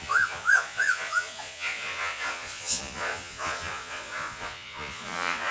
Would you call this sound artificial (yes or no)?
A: yes